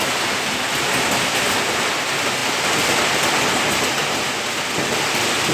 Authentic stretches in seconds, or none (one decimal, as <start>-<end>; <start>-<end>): 0.0-5.5